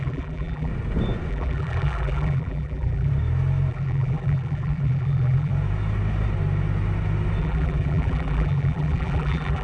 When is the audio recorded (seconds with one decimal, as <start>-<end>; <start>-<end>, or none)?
0.7-1.3; 3.1-3.7; 5.5-7.4